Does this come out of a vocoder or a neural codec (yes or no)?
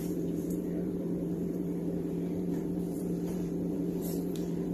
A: yes